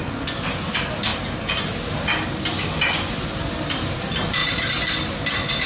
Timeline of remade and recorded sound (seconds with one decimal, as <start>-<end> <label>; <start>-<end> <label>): 0.0-5.7 recorded